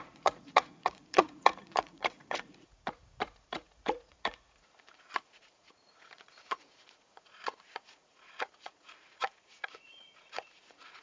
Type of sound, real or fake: fake